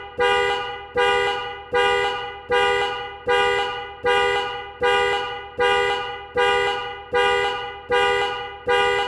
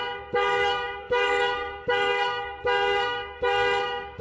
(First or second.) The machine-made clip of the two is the second